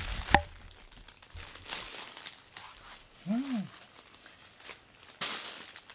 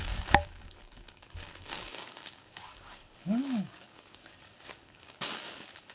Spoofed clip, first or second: second